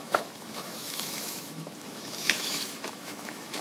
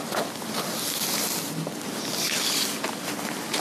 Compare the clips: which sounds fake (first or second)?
first